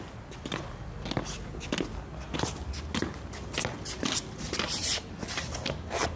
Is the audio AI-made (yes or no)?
no